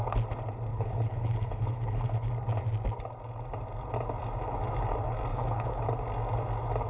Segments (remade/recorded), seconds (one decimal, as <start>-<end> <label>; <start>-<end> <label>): 0.0-0.7 recorded; 0.7-2.3 remade; 2.3-5.3 recorded; 5.3-5.8 remade; 5.8-6.9 recorded